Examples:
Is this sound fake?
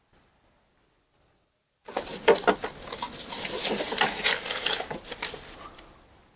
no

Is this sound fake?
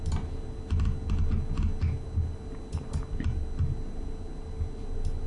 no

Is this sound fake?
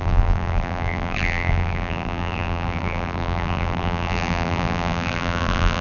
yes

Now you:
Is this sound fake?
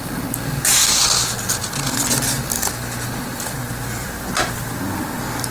no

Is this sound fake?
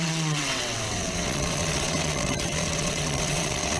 yes